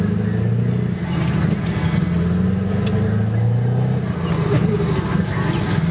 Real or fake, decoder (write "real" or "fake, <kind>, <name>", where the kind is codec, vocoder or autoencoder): real